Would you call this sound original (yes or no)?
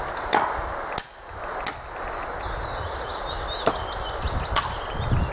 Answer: yes